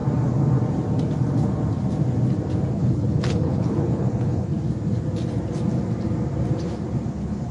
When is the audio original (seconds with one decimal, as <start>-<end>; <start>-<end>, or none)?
0.0-2.7; 4.5-7.1